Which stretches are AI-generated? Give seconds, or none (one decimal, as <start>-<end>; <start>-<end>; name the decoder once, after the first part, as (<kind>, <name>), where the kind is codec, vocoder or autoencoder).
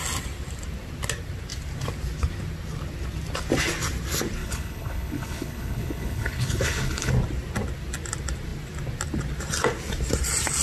4.4-7.1 (codec, HILCodec)